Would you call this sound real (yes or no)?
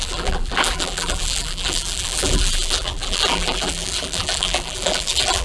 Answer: no